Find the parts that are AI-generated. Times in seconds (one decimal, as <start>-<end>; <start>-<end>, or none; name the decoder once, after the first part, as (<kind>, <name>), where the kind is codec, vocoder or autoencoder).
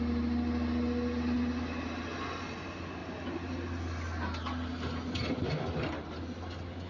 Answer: none